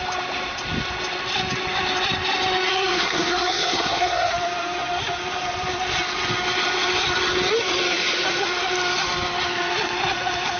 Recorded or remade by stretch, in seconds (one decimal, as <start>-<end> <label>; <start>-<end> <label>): 0.0-2.7 recorded; 2.7-4.3 remade; 4.3-10.6 recorded